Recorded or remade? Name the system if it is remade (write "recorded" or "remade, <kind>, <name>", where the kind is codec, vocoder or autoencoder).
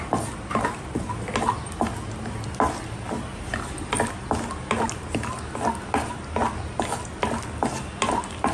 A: recorded